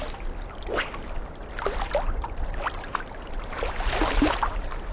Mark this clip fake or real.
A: real